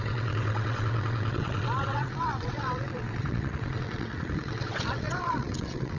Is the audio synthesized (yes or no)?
yes